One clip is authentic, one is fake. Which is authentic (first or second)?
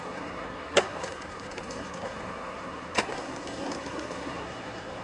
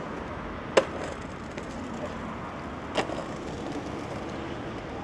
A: second